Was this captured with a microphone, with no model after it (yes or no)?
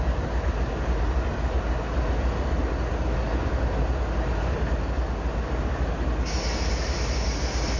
yes